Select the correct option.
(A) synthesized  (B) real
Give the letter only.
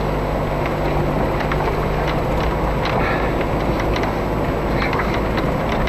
B